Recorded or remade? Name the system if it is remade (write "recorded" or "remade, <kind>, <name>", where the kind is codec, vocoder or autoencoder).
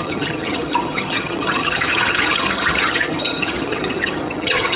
remade, vocoder, HiFi-GAN